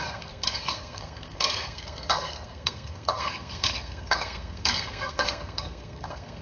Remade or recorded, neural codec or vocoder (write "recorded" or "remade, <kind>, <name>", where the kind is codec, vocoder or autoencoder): remade, codec, SNAC